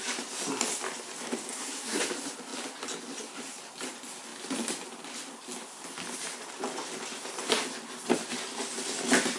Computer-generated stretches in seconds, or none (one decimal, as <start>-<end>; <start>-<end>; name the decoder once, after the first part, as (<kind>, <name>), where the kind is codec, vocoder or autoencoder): 1.5-2.0 (codec, SNAC)

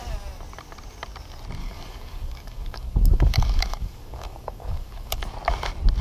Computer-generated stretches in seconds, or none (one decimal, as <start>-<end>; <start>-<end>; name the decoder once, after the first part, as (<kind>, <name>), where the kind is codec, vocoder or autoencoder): 1.6-5.2 (codec, DAC)

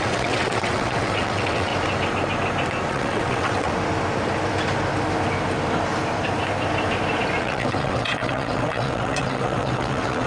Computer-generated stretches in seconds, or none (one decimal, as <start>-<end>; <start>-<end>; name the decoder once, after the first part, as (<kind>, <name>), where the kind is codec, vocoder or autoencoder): 0.0-1.7 (vocoder, WaveNeXt); 2.9-3.7; 7.4-10.3

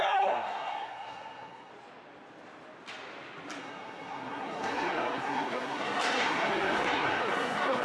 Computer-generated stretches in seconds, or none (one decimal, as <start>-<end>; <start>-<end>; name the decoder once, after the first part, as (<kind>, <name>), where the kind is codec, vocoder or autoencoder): 0.0-1.7 (codec, SNAC); 3.6-7.8

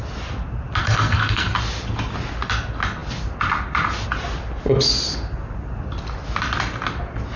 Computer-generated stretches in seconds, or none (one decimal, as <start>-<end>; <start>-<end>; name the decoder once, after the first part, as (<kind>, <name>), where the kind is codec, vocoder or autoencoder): 0.8-1.5 (codec, SNAC)

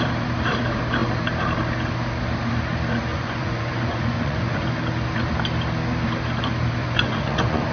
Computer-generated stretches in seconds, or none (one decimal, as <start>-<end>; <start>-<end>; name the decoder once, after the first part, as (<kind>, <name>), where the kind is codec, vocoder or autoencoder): 3.1-4.8 (vocoder, Vocos); 6.8-7.7

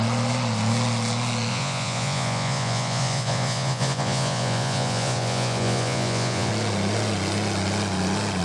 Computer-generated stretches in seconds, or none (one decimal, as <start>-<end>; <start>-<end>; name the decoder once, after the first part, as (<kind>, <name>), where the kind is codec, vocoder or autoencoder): 1.5-6.5 (vocoder, Vocos)